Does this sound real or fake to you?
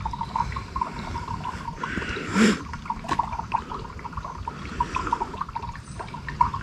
real